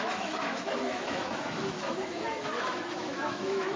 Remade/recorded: remade